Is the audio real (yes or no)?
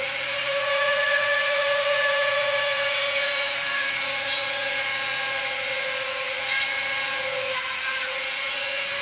no